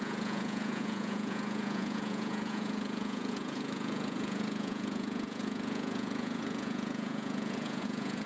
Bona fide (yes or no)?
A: no